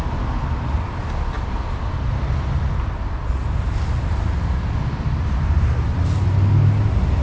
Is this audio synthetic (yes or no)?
no